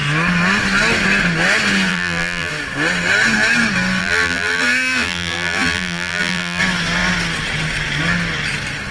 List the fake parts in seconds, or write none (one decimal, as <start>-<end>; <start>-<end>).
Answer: 1.9-2.5; 4.0-6.6